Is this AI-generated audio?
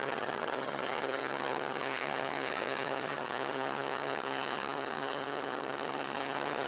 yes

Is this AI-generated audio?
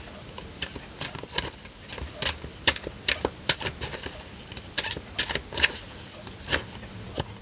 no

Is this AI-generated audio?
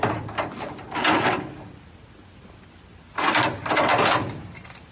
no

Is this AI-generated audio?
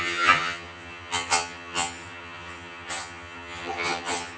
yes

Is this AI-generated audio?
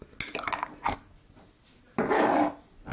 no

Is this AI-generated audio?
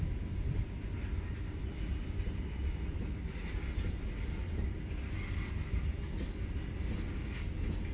no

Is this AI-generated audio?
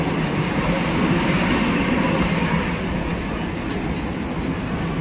no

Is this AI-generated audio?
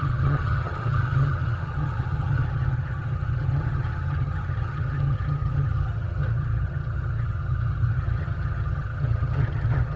yes